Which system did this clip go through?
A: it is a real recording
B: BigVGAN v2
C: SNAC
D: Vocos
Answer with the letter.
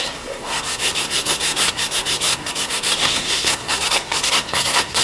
C